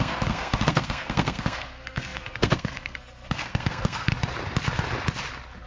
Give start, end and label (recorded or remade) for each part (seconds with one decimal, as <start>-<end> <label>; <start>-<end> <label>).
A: 0.0-4.1 remade; 4.1-5.7 recorded